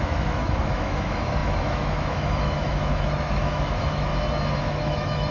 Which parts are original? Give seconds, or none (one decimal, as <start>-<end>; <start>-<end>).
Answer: 4.1-4.6